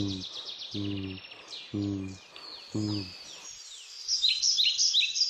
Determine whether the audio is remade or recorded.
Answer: recorded